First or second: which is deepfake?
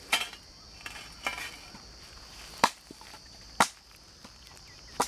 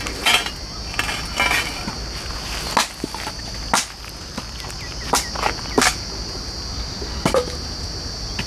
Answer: first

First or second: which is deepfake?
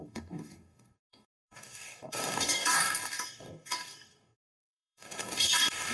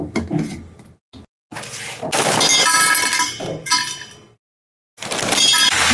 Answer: first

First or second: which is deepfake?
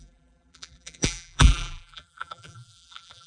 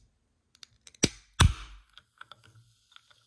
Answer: first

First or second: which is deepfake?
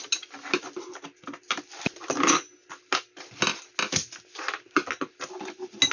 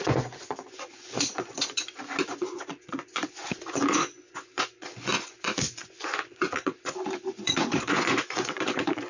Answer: second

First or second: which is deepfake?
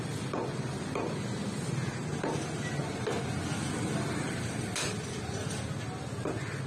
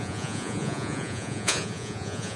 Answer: second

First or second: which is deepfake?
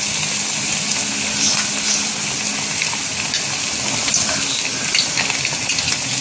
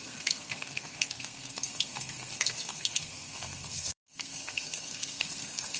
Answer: second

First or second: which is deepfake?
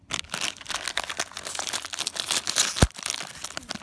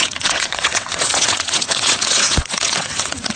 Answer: second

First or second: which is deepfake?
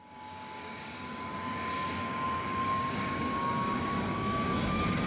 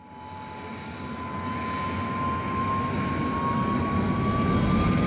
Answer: first